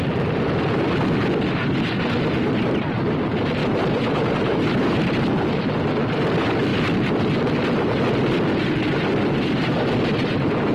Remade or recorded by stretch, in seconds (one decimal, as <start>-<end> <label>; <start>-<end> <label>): 0.0-3.6 recorded; 3.6-5.1 remade; 5.1-10.7 recorded